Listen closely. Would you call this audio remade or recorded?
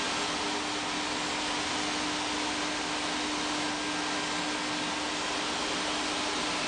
recorded